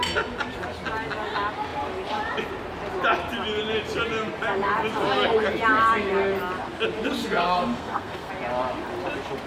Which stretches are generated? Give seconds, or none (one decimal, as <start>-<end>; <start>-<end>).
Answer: 7.2-8.3